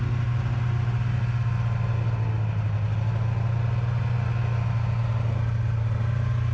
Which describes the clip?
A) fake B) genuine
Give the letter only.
B